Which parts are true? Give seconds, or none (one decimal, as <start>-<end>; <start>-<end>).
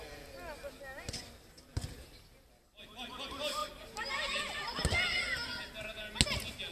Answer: 0.0-6.7